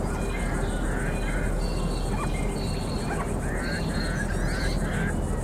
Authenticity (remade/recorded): recorded